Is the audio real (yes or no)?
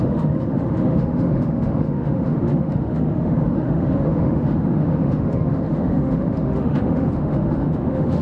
no